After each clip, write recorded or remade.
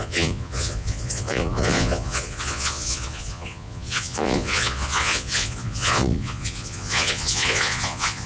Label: remade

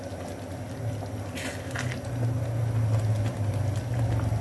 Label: recorded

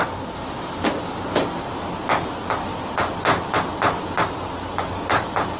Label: recorded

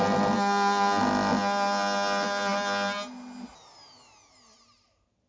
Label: recorded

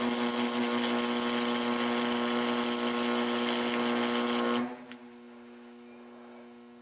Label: recorded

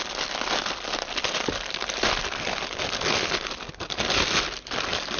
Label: recorded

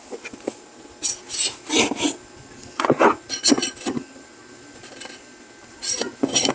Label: recorded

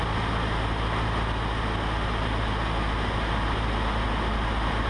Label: recorded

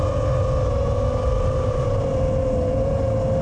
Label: recorded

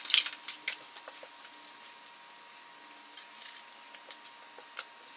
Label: recorded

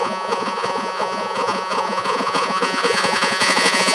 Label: remade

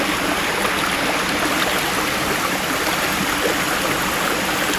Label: recorded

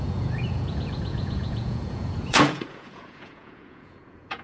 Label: remade